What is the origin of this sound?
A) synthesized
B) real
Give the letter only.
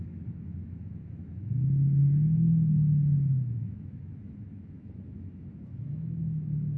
A